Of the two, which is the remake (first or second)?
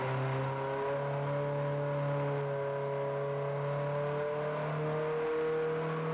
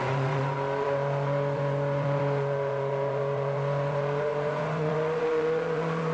second